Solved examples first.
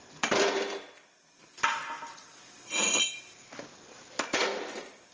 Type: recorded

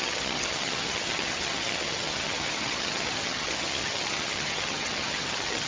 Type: remade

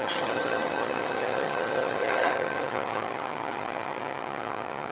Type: remade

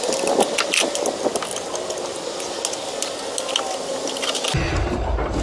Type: recorded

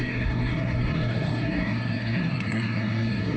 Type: remade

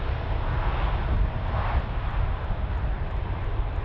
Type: recorded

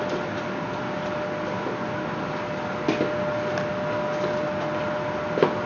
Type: recorded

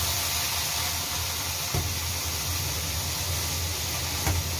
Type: recorded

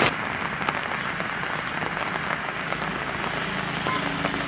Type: recorded